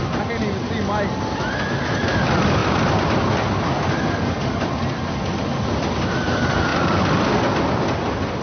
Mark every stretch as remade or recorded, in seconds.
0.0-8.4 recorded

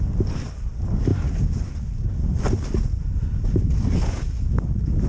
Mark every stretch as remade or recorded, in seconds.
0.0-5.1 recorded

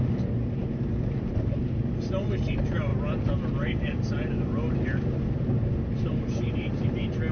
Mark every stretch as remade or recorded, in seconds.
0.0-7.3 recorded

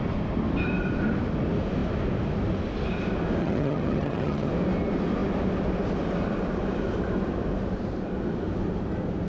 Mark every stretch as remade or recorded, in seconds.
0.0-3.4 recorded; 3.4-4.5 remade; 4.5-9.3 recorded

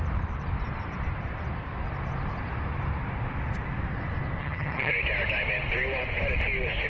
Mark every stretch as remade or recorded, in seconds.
0.0-4.4 recorded; 4.4-4.9 remade; 4.9-6.9 recorded